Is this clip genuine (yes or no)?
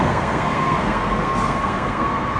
no